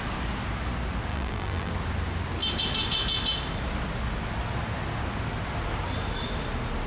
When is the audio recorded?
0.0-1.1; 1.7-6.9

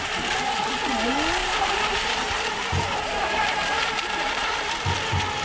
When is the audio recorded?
0.0-1.4; 4.6-5.4

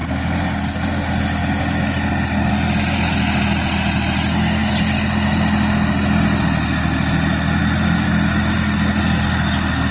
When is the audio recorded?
0.0-9.9

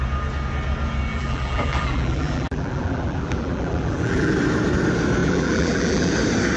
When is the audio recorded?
0.0-1.1; 4.3-5.2; 6.1-6.6

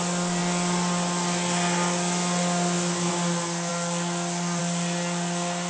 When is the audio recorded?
0.0-5.7